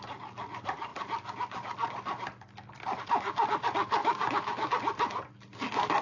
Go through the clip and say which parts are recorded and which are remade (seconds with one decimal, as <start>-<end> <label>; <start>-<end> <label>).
0.0-4.0 recorded; 4.0-4.7 remade; 4.7-6.0 recorded